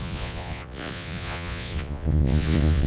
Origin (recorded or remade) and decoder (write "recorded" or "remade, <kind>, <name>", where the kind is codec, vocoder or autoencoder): remade, vocoder, Vocos